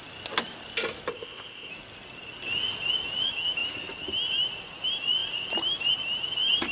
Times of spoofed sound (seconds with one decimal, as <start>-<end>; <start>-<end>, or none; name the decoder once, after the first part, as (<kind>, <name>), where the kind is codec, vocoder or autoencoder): 1.1-1.7 (codec, ZipCodec)